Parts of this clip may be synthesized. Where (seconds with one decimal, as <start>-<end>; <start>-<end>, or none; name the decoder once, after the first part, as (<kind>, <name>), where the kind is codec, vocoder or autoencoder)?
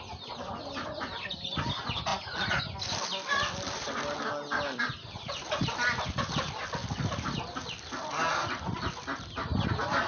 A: none